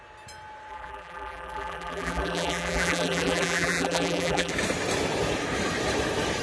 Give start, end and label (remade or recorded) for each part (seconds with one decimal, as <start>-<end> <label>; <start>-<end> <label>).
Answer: 0.0-0.7 recorded; 0.7-4.5 remade; 4.5-6.4 recorded